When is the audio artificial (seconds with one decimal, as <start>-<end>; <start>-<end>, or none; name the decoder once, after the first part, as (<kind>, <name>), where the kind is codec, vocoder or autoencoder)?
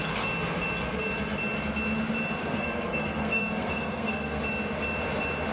2.4-4.4 (codec, SNAC)